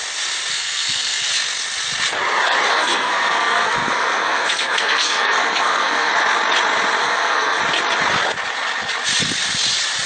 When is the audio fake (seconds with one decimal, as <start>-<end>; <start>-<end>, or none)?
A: 0.5-1.3; 2.7-6.1; 7.0-7.6